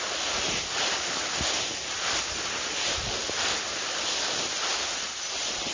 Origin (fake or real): real